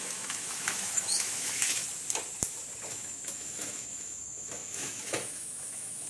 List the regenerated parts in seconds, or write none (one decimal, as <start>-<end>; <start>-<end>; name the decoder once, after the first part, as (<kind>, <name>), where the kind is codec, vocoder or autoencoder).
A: 0.0-1.8 (autoencoder, DAC-VAE); 2.9-6.1